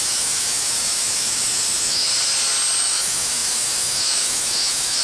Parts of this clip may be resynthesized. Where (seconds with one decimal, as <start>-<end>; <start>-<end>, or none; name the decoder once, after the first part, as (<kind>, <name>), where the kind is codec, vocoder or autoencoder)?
0.0-2.1 (autoencoder, DAC-VAE); 2.8-5.0

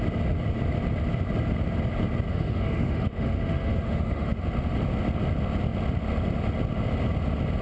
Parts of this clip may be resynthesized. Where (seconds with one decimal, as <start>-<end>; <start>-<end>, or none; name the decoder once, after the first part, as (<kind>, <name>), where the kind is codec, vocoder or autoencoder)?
2.3-4.4 (autoencoder, DAC-VAE)

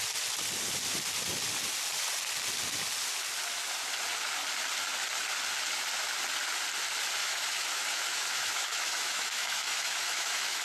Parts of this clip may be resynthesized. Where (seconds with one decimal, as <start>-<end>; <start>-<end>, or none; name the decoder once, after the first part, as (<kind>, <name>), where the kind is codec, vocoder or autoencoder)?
7.2-10.6 (autoencoder, DAC-VAE)

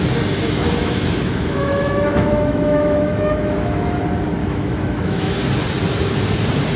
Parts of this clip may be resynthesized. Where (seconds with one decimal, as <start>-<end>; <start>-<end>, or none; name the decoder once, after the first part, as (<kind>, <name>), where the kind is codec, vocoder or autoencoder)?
0.8-4.0 (autoencoder, DAC-VAE); 4.4-5.4